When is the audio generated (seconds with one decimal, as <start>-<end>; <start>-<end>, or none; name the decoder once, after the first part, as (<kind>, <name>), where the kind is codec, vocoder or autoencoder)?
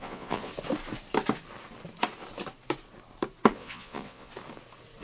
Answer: 0.0-0.5 (vocoder, Vocos); 3.5-4.3